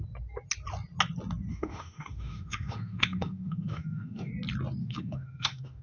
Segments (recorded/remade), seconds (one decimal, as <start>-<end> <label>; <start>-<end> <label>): 0.0-1.5 recorded; 1.5-4.3 remade; 4.3-4.8 recorded; 4.8-5.8 remade